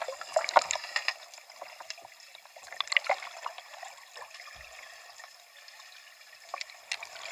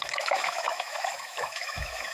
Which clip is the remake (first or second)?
second